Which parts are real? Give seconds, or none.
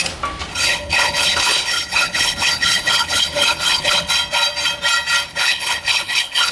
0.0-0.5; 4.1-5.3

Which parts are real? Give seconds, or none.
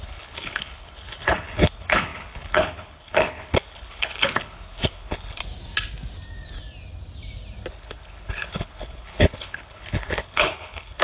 5.4-7.7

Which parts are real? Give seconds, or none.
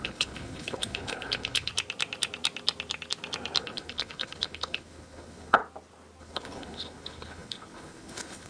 1.7-3.6; 5.6-6.2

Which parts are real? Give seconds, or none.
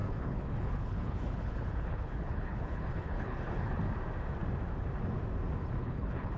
3.8-5.8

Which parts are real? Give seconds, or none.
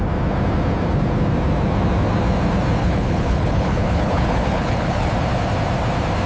0.0-2.8; 5.1-6.3